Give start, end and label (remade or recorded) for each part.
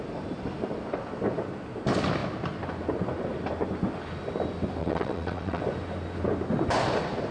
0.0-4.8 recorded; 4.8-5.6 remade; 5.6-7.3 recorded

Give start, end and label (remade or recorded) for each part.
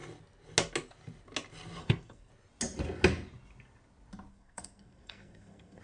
0.0-1.8 recorded; 1.8-2.3 remade; 2.3-4.3 recorded; 4.3-5.8 remade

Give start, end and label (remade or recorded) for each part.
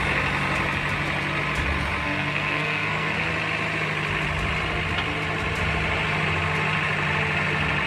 0.0-2.0 recorded; 2.0-3.3 remade; 3.3-7.9 recorded